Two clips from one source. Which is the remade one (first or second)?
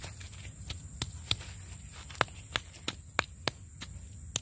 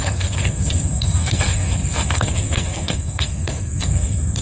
second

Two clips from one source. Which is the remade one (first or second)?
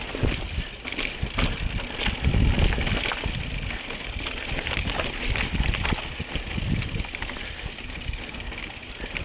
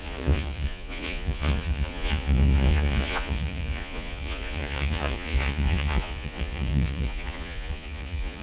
second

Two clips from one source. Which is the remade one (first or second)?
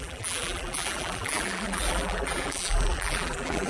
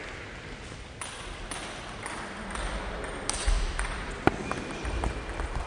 first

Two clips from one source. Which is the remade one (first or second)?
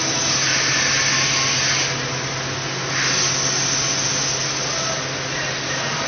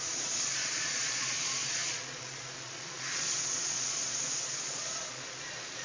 second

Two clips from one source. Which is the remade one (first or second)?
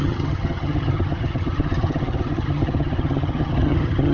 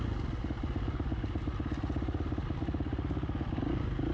first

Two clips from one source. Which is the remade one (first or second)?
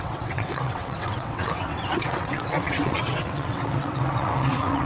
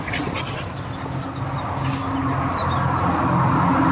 first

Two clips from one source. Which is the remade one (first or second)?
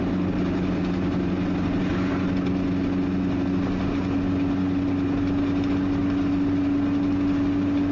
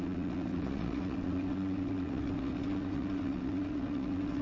second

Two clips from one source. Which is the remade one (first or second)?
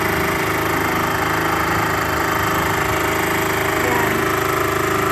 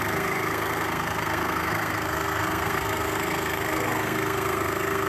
second